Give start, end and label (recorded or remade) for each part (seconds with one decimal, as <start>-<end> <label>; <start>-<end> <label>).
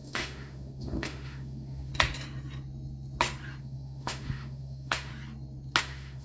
0.0-1.9 remade; 1.9-3.6 recorded; 3.6-5.1 remade; 5.1-5.8 recorded; 5.8-6.2 remade